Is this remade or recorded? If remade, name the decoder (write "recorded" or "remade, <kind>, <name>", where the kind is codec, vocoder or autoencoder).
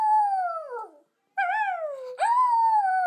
recorded